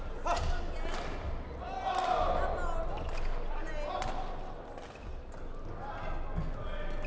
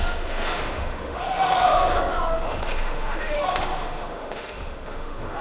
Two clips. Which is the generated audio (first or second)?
second